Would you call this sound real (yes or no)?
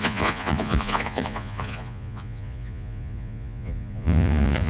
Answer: no